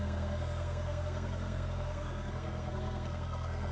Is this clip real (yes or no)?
no